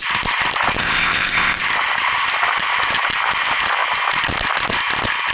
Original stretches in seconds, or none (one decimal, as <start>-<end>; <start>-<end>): 0.0-0.8; 1.6-5.3